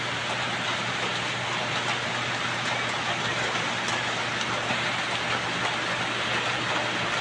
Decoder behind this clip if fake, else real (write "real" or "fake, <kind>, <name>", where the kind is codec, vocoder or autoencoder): real